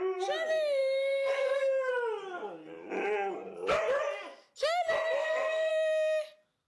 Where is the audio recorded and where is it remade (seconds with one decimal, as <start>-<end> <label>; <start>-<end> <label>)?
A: 0.0-0.8 recorded; 0.8-1.9 remade; 1.9-5.2 recorded; 5.2-5.7 remade; 5.7-6.7 recorded